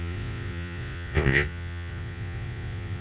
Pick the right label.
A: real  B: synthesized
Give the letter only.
B